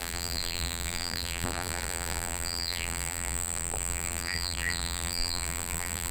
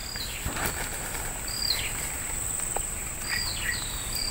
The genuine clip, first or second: second